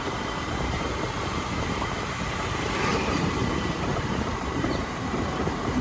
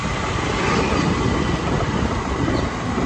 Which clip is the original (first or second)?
second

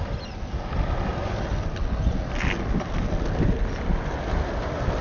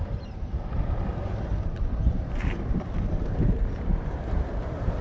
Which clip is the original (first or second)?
first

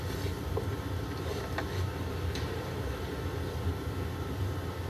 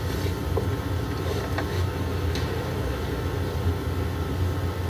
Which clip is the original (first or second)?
second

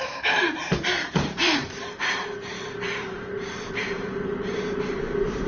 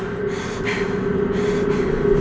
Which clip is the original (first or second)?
second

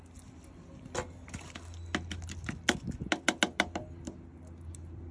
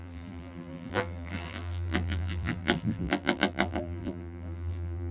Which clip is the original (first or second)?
first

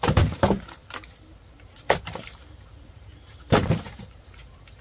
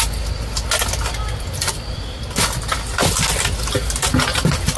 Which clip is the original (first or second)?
second